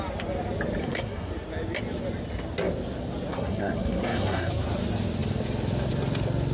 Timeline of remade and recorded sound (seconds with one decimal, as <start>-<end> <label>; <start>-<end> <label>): 0.0-0.8 recorded; 0.8-1.3 remade; 1.3-3.3 recorded; 3.3-4.5 remade; 4.5-6.5 recorded